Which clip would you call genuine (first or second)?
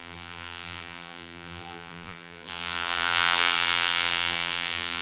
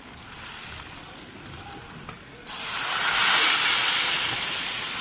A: second